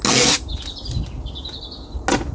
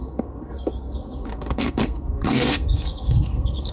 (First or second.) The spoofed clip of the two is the second